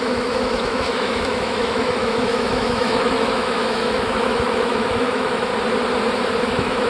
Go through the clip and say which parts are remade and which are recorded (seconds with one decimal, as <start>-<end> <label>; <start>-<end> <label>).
0.0-5.5 remade; 5.5-6.4 recorded; 6.4-6.9 remade